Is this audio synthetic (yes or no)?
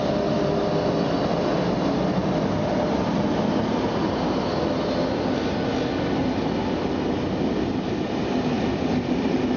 no